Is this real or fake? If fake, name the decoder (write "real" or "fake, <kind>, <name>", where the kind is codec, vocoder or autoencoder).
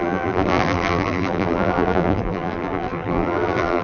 fake, vocoder, BigVGAN v2